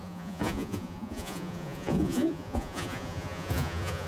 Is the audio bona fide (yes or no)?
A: no